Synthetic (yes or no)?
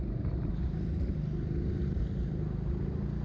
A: no